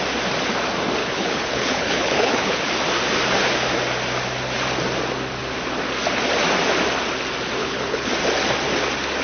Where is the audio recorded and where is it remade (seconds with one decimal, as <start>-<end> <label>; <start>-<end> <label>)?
0.0-1.0 recorded; 1.0-2.7 remade; 2.7-7.6 recorded; 7.6-8.1 remade; 8.1-9.2 recorded